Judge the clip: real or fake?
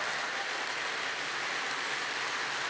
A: real